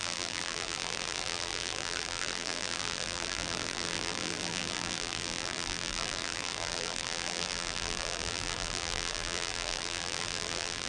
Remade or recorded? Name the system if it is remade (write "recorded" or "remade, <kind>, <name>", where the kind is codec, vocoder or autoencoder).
remade, vocoder, BigVGAN v2